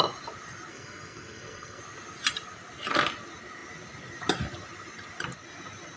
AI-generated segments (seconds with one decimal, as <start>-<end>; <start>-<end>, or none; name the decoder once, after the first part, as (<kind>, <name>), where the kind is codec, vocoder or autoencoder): 0.7-1.8 (codec, SNAC)